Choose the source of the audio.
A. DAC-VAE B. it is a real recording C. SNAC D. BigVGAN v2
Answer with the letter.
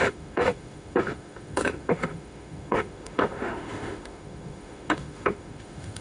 A